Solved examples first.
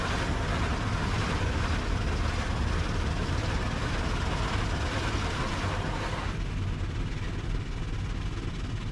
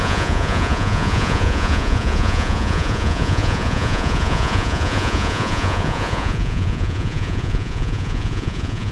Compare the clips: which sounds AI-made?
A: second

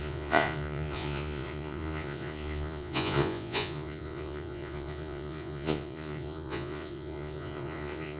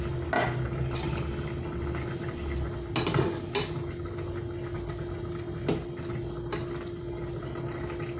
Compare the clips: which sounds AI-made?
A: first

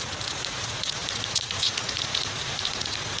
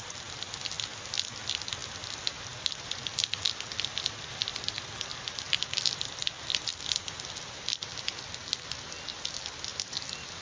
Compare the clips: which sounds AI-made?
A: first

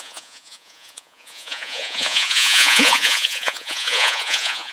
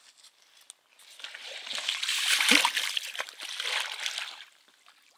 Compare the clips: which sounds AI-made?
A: first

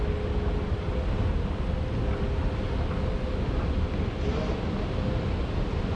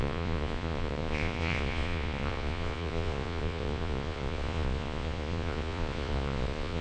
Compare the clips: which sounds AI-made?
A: second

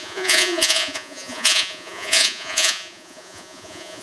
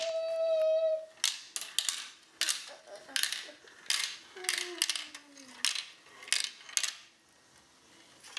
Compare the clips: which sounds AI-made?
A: first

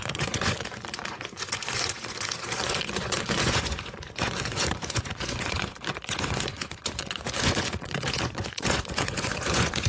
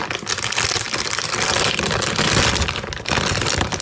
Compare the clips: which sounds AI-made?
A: first